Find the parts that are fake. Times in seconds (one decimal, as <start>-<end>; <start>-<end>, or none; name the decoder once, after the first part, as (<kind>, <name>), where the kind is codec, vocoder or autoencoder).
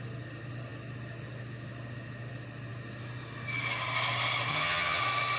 4.5-5.0 (vocoder, HiFi-GAN)